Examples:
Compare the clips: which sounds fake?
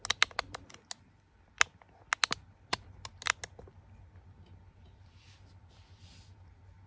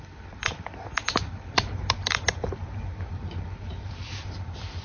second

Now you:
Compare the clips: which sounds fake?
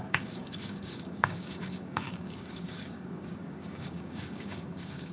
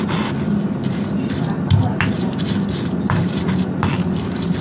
first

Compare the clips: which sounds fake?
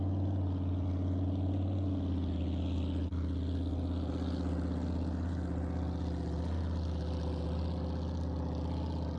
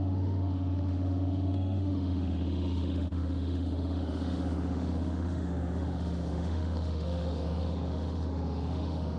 second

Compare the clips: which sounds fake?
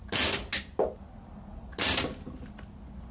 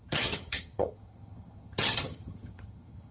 second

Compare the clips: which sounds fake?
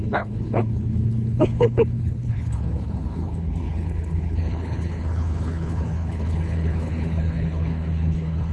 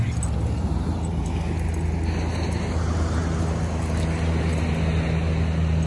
first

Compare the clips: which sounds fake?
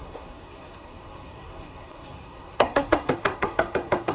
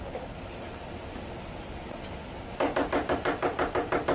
first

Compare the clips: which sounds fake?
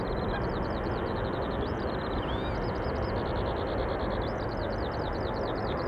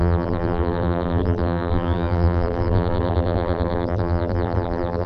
second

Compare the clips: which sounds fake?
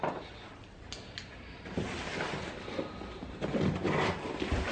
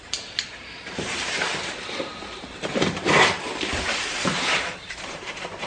second